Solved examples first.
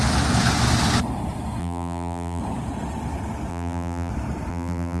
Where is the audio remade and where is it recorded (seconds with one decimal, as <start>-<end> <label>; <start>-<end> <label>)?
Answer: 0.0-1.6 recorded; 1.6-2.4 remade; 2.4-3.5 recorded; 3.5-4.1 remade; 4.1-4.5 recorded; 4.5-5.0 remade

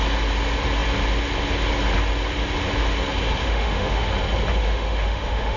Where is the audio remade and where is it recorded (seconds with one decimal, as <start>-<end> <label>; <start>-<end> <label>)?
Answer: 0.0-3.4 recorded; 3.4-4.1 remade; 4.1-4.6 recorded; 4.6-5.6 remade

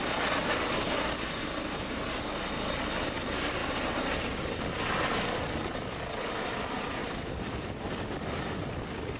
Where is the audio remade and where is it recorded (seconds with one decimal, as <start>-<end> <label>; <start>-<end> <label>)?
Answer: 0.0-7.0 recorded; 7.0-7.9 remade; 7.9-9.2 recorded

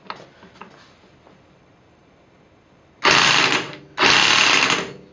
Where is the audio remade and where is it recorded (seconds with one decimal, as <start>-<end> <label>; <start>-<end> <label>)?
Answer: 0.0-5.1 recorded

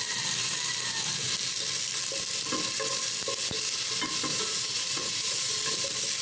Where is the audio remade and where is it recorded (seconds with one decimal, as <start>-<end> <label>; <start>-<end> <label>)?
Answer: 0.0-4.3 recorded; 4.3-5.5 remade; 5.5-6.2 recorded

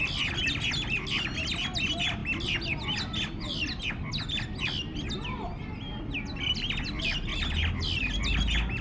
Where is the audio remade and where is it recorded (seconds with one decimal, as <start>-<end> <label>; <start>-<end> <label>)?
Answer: 0.0-8.8 recorded